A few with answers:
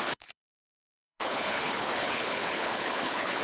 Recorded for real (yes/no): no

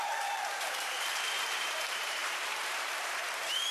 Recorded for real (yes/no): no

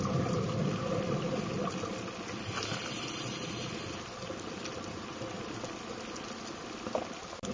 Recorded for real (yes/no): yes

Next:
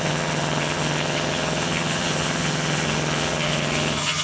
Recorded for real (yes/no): no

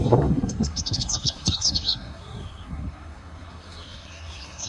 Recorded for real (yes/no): no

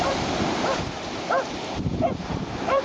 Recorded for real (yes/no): no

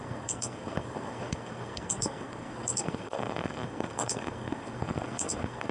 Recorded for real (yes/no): no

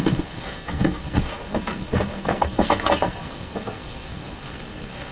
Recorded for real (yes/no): no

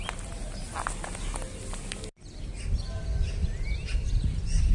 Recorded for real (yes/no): yes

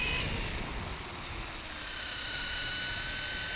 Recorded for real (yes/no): yes